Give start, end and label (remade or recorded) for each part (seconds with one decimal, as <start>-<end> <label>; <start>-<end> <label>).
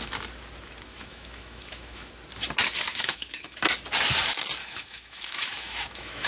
0.0-0.9 recorded; 0.9-2.1 remade; 2.1-2.9 recorded; 2.9-3.6 remade; 3.6-4.6 recorded; 4.6-6.3 remade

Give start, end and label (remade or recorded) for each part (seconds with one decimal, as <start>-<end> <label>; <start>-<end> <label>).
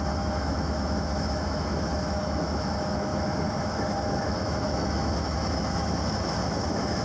0.0-7.0 remade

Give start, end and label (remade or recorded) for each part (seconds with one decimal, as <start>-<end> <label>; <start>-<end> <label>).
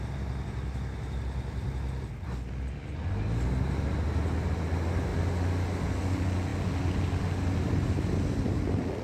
0.0-9.0 recorded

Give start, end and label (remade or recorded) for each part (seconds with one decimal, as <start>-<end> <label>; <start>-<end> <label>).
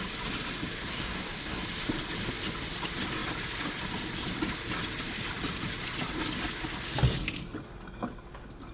0.0-0.9 recorded; 0.9-1.6 remade; 1.6-8.7 recorded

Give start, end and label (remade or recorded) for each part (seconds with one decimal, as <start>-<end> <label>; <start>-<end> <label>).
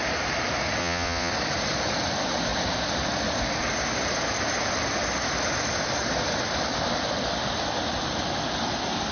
0.0-0.8 recorded; 0.8-1.3 remade; 1.3-9.1 recorded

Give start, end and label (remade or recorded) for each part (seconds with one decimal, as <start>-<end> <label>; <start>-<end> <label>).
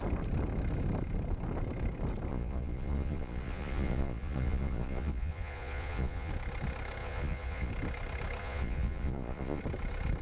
0.0-2.3 recorded; 2.3-6.3 remade; 6.3-7.0 recorded; 7.0-7.7 remade; 7.7-8.4 recorded; 8.4-9.6 remade; 9.6-10.2 recorded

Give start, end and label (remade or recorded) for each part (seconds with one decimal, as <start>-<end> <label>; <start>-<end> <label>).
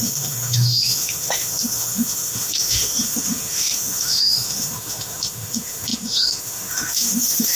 0.0-7.6 remade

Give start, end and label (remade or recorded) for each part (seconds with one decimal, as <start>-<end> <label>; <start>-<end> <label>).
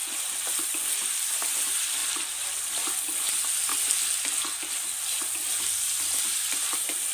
0.0-0.6 recorded; 0.6-3.7 remade; 3.7-5.5 recorded; 5.5-7.1 remade